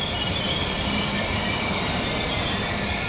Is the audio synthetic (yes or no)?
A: yes